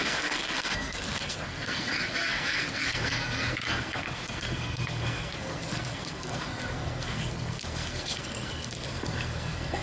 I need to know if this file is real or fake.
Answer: fake